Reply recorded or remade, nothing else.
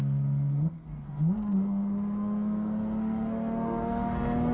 remade